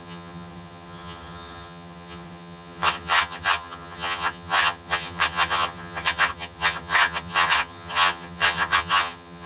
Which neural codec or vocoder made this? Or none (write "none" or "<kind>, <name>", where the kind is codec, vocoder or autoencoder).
vocoder, HiFi-GAN